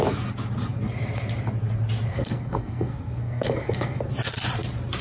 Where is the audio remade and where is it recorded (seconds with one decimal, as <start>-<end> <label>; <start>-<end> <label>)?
0.0-2.1 recorded; 2.1-4.1 remade; 4.1-5.0 recorded